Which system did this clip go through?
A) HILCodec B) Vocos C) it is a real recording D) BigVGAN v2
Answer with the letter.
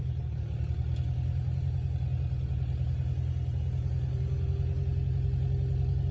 C